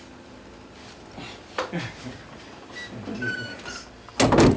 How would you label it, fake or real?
real